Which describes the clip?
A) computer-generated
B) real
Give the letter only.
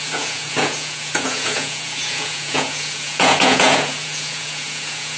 A